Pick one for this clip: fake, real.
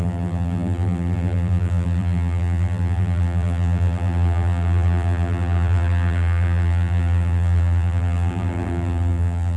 fake